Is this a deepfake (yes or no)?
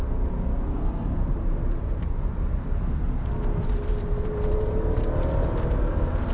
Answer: yes